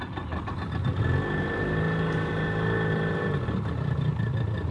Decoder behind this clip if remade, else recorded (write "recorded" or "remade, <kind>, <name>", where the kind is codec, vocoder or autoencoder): recorded